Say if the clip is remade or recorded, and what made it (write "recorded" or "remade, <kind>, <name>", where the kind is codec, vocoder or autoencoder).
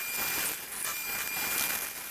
recorded